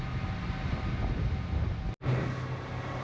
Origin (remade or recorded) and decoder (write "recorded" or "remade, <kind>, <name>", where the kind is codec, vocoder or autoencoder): recorded